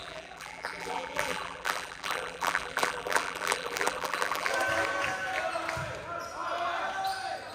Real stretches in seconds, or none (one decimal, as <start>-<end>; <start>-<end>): 4.5-7.5